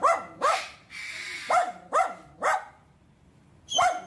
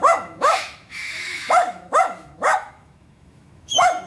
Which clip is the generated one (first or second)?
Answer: second